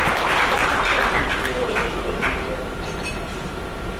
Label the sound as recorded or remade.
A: recorded